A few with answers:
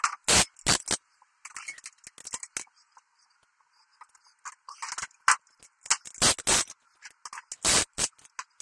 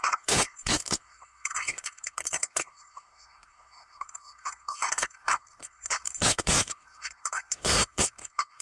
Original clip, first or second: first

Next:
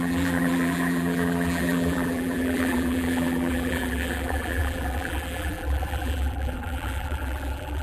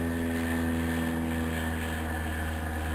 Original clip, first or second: second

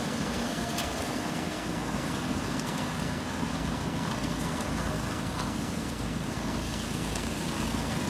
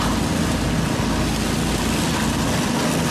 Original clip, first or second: second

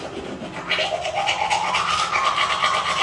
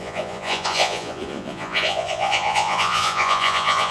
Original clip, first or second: first